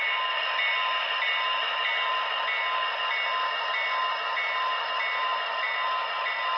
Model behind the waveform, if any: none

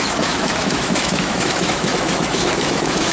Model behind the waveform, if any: autoencoder, DAC-VAE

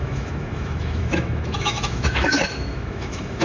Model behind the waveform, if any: autoencoder, DAC-VAE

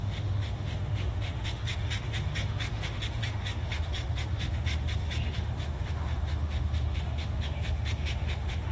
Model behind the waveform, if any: autoencoder, DAC-VAE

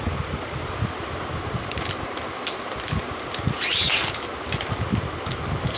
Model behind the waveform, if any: none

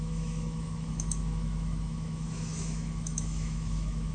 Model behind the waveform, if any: autoencoder, DAC-VAE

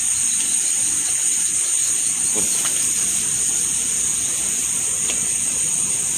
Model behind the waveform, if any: none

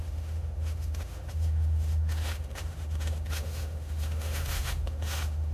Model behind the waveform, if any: autoencoder, DAC-VAE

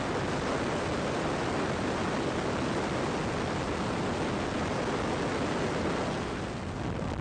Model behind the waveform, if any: none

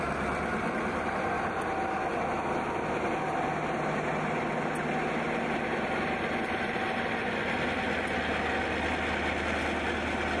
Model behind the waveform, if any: none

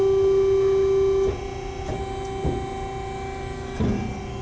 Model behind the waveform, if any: none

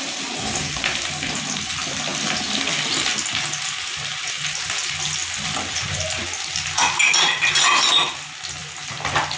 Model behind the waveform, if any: none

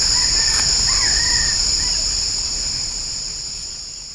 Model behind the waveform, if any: none